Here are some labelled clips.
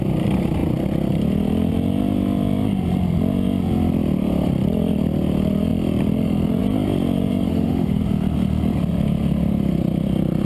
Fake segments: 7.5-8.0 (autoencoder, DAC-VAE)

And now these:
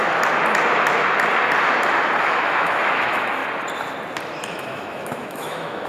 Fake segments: 2.2-3.4 (autoencoder, DAC-VAE); 4.5-5.9

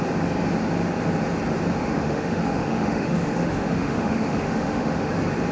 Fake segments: 1.8-5.1 (autoencoder, DAC-VAE)

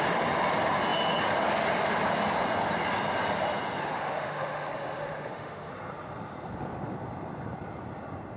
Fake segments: 3.8-5.7 (autoencoder, DAC-VAE)

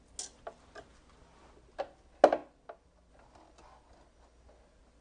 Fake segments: none

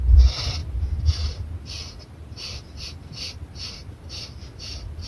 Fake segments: none

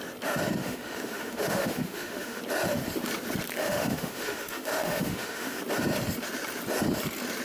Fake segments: 0.6-2.4 (autoencoder, DAC-VAE); 3.6-5.6